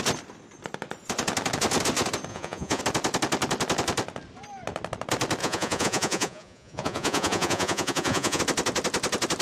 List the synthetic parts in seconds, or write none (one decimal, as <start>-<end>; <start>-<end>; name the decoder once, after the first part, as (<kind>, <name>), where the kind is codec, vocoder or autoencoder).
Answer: 2.3-2.8 (vocoder, Vocos); 5.4-8.4